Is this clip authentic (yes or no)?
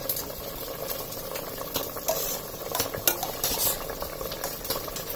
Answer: yes